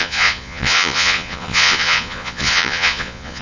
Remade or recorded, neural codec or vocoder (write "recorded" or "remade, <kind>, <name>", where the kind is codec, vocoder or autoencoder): remade, vocoder, Vocos